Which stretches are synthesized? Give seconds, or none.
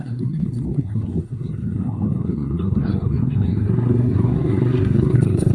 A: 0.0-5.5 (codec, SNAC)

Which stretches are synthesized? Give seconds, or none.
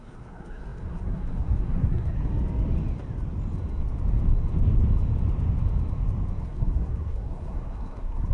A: 0.0-2.3 (codec, SNAC); 6.4-8.3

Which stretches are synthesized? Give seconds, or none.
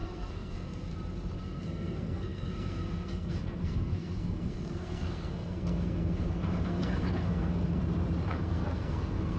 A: 0.0-0.9 (codec, SNAC); 1.4-7.8; 8.3-9.4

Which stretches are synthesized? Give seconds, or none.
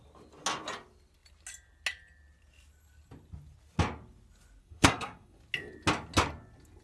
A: 4.6-5.4 (codec, SNAC)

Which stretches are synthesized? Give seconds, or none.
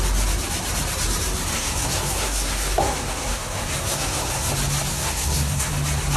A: 1.5-4.5 (codec, SNAC); 4.9-5.7